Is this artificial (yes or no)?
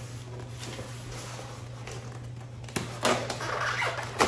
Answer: no